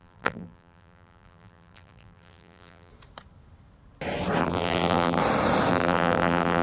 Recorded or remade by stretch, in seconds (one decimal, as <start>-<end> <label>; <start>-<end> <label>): 0.0-2.9 remade; 2.9-4.4 recorded; 4.4-5.2 remade; 5.2-5.7 recorded; 5.7-6.6 remade